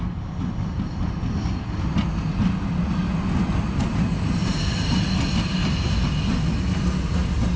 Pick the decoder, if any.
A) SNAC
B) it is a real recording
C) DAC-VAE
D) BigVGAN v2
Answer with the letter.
B